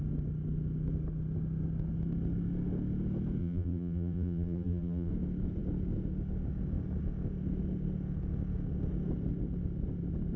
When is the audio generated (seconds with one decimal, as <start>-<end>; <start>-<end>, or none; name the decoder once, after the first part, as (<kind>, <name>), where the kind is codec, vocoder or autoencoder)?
3.4-5.1 (vocoder, BigVGAN v2)